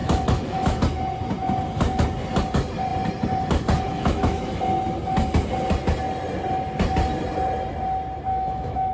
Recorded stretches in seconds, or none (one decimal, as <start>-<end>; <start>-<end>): 0.8-3.9; 4.6-8.3